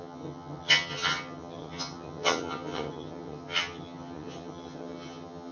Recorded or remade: remade